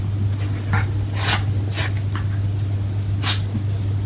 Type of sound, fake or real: real